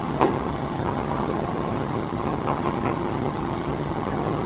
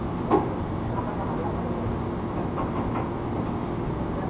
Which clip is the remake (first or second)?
first